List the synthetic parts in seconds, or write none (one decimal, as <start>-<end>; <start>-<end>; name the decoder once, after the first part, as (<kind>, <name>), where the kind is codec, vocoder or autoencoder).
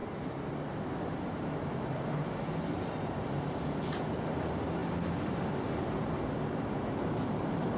none